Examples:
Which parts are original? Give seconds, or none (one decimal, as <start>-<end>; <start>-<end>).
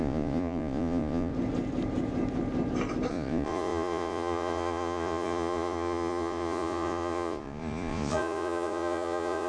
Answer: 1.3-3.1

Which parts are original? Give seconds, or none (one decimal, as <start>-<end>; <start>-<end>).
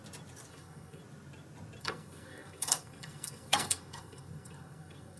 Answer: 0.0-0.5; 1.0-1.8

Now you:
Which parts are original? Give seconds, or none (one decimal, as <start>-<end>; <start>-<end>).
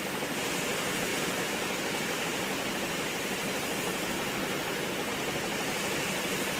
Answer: 0.0-6.6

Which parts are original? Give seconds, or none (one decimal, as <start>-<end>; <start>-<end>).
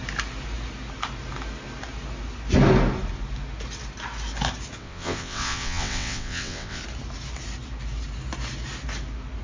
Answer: 0.0-4.8; 6.8-9.4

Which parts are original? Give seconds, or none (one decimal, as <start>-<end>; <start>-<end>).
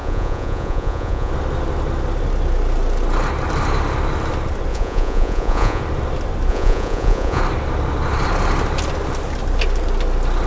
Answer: 1.3-4.7; 5.8-6.5; 7.4-10.5